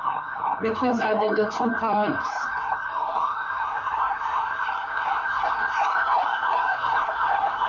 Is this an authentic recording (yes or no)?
no